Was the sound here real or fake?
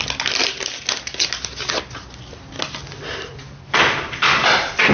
real